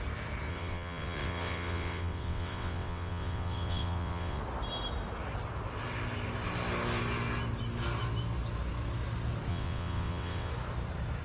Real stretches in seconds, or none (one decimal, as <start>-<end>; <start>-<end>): 0.0-0.5; 4.4-9.5; 10.5-11.2

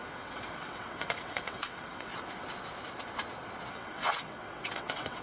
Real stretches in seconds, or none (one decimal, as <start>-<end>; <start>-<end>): 2.1-3.7

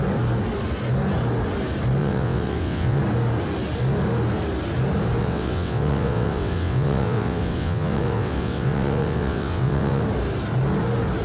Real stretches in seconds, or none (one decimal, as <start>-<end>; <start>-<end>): 0.0-2.0; 3.0-5.2; 10.0-11.2

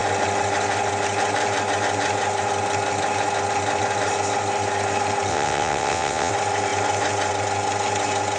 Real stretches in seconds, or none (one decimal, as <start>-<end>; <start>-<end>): 0.0-5.3; 6.3-8.4

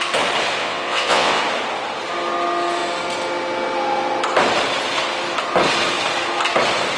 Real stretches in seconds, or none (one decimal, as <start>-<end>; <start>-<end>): 0.0-0.6; 1.4-7.0

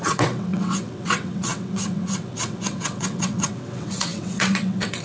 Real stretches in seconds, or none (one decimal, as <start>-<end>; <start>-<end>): none

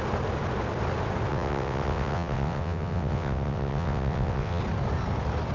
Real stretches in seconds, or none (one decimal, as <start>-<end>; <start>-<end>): 0.0-1.3; 4.6-5.5